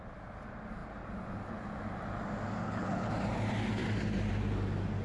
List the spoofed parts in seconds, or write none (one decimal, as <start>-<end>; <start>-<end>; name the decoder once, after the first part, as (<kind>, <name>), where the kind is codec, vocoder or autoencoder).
2.6-3.1 (codec, HILCodec)